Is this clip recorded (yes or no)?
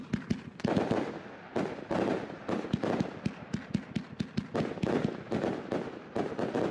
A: yes